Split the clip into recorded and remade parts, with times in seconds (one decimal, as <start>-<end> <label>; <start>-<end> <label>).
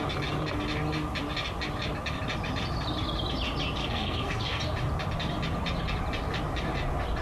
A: 0.0-3.8 recorded; 3.8-4.6 remade; 4.6-7.2 recorded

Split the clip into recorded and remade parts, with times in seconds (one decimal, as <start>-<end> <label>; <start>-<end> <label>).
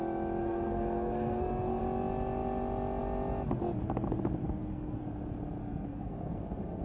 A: 0.0-0.4 recorded; 0.4-1.8 remade; 1.8-4.4 recorded; 4.4-5.0 remade; 5.0-5.6 recorded; 5.6-6.8 remade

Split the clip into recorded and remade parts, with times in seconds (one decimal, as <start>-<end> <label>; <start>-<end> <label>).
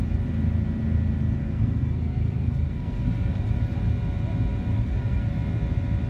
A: 0.0-1.4 recorded; 1.4-3.6 remade; 3.6-4.7 recorded; 4.7-5.3 remade; 5.3-6.1 recorded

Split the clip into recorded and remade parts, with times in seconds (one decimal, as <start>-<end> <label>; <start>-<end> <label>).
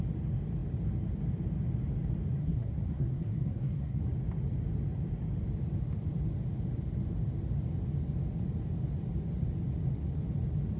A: 0.0-2.4 recorded; 2.4-4.0 remade; 4.0-10.8 recorded